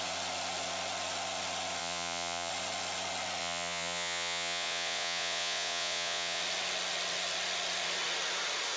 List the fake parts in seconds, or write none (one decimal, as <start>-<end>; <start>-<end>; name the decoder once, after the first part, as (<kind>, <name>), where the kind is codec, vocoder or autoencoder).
1.8-2.5 (vocoder, Vocos); 3.4-6.4